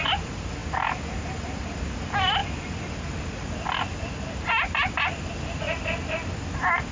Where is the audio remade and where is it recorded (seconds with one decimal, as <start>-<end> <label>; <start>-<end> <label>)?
0.0-6.9 recorded